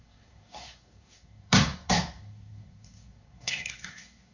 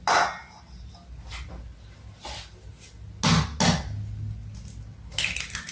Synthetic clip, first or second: first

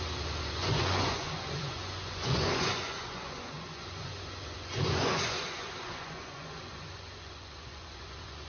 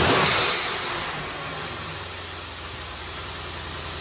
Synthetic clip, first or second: first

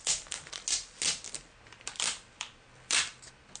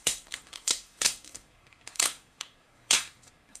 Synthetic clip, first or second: second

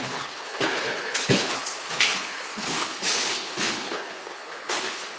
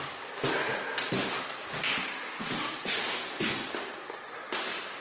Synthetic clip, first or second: first